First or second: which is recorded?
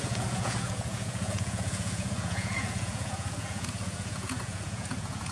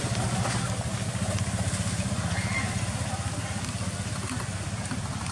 second